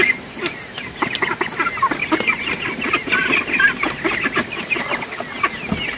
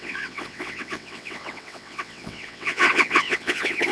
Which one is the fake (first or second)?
second